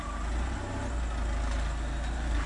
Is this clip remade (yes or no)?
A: no